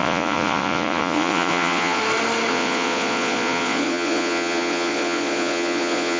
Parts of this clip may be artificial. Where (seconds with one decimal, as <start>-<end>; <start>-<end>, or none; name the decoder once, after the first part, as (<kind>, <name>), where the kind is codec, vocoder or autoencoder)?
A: 0.0-2.0 (vocoder, Vocos); 2.5-6.2